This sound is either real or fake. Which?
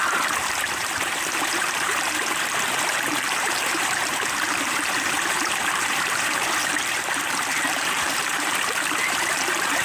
fake